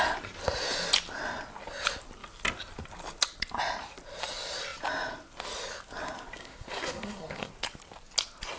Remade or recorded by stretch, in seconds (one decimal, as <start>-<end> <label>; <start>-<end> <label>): 0.0-6.4 recorded; 6.4-7.5 remade; 7.5-8.6 recorded